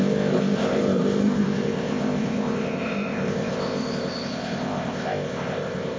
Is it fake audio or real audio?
fake